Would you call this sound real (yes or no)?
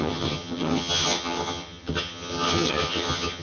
no